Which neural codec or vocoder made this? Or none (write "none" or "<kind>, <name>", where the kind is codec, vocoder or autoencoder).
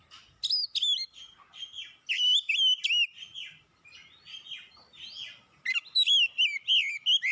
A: none